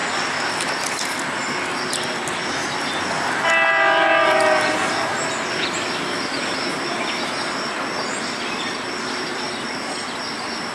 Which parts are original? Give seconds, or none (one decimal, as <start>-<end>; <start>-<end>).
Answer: 0.0-10.7